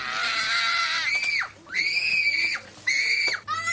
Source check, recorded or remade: remade